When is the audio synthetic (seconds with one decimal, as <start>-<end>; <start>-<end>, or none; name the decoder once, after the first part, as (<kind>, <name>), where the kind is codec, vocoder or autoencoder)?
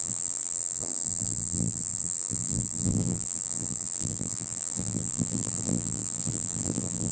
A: 0.0-7.1 (vocoder, BigVGAN v2)